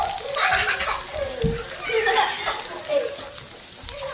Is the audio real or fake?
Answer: real